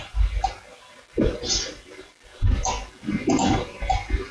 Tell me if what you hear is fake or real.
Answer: real